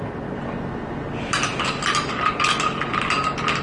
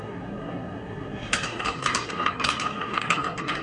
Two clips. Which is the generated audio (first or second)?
second